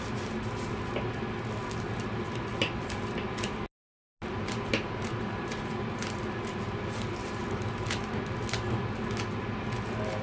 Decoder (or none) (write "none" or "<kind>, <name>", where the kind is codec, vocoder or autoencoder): none